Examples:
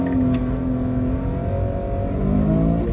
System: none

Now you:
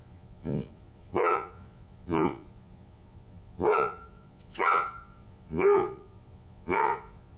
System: vocoder, Vocos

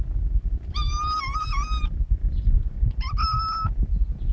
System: none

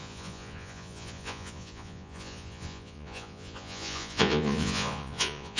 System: vocoder, Vocos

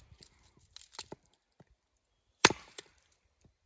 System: none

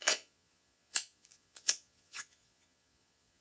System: vocoder, Vocos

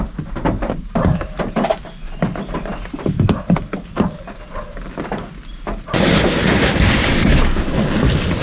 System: none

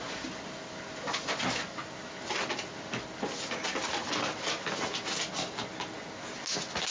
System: none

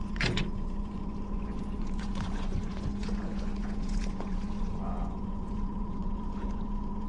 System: vocoder, Vocos